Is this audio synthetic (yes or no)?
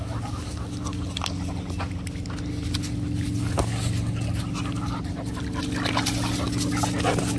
no